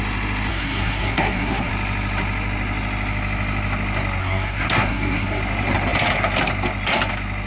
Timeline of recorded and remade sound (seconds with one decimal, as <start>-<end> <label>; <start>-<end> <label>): 0.0-0.5 recorded; 0.5-1.7 remade; 1.7-4.2 recorded; 4.2-5.4 remade; 5.4-7.5 recorded